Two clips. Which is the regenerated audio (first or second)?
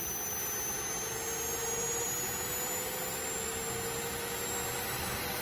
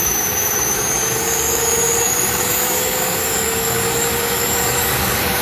second